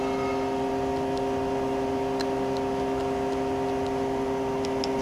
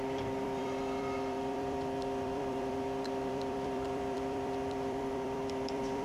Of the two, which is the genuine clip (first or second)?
first